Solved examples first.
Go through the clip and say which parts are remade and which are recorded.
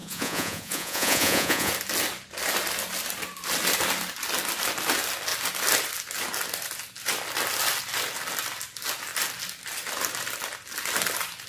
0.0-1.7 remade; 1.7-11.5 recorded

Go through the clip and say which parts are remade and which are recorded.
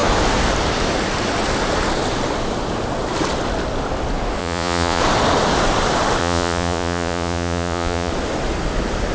0.0-4.4 recorded; 4.4-5.0 remade; 5.0-6.2 recorded; 6.2-8.1 remade; 8.1-9.1 recorded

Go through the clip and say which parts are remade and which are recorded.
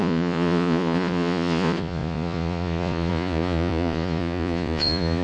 0.0-5.2 remade